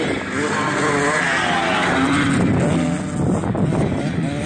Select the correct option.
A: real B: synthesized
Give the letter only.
A